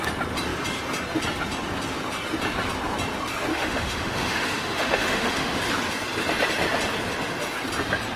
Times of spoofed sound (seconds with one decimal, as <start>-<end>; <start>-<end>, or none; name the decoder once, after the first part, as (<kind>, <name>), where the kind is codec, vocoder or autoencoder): 3.5-5.6 (autoencoder, DAC-VAE)